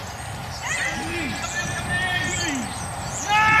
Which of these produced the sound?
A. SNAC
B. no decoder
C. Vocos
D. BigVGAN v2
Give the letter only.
B